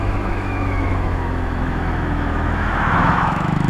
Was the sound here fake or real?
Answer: fake